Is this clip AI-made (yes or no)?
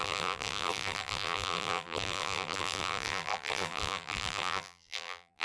yes